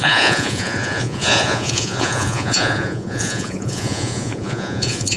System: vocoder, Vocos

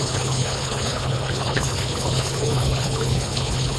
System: codec, HILCodec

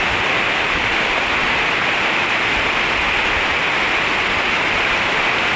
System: none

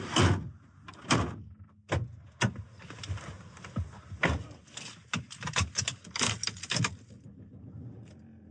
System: none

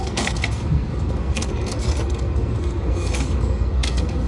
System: codec, SNAC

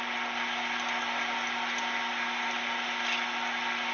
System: none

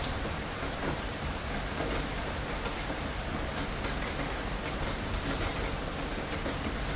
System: none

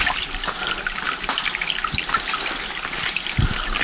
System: none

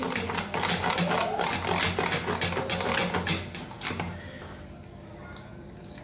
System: none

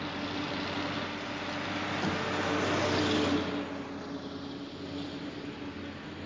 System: none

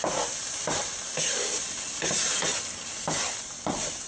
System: none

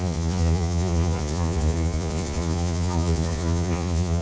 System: vocoder, Vocos